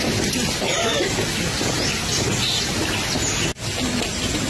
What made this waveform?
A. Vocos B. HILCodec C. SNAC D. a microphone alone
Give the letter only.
D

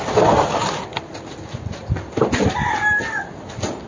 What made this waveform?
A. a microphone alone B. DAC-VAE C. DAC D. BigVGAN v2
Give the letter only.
A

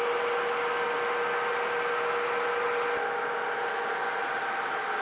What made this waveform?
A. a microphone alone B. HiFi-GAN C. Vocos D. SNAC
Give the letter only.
A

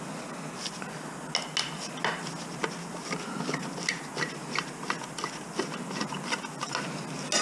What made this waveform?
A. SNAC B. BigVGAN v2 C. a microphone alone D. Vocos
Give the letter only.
C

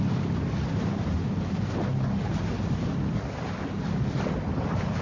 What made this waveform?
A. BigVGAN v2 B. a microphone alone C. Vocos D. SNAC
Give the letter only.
B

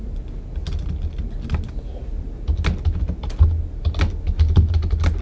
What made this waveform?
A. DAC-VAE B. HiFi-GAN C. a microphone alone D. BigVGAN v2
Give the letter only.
C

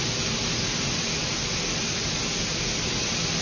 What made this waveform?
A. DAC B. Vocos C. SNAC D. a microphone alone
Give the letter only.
D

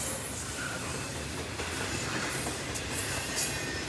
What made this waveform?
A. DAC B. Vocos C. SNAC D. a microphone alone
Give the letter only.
D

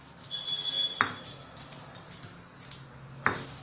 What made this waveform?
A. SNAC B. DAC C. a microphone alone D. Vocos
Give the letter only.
C